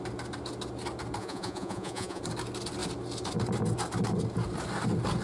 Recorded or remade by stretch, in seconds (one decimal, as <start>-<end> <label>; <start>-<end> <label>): 0.0-1.2 recorded; 1.2-2.2 remade; 2.2-5.2 recorded